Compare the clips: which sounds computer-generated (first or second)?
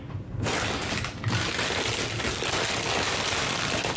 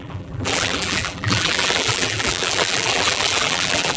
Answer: second